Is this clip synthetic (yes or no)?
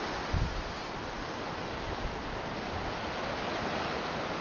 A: no